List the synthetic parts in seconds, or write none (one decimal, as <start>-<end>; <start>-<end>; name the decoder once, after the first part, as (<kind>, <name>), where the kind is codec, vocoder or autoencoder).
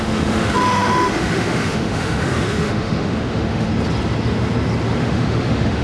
0.0-3.7 (autoencoder, DAC-VAE); 5.0-5.8